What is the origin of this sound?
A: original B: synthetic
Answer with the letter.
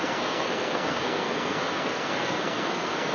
B